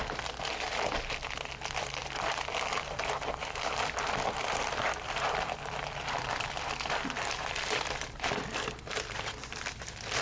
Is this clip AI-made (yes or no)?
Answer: yes